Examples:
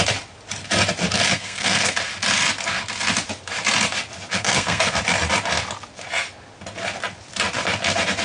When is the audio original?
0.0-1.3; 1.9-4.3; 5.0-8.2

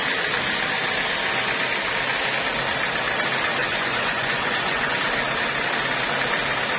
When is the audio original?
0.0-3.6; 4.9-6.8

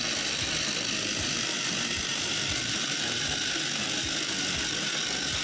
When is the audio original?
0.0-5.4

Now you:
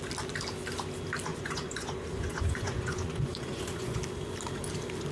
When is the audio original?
0.0-1.3; 4.0-5.1

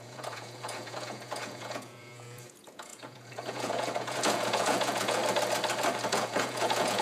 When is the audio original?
5.2-6.1

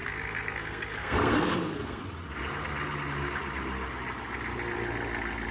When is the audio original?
2.0-5.5

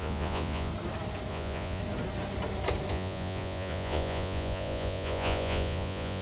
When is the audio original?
0.7-1.3; 1.8-2.9

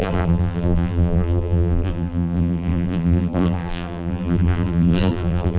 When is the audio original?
none